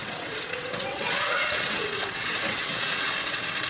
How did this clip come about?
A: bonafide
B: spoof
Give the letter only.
B